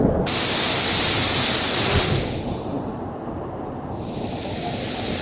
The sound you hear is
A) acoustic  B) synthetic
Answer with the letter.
A